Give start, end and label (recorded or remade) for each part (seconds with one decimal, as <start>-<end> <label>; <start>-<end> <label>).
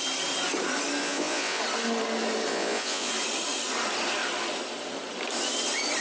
0.0-1.0 recorded; 1.0-1.6 remade; 1.6-2.5 recorded; 2.5-3.1 remade; 3.1-6.0 recorded